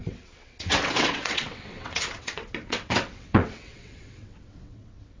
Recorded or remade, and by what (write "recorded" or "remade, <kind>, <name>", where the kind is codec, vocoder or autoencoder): remade, vocoder, WaveNeXt